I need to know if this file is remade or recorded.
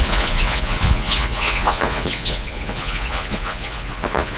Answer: remade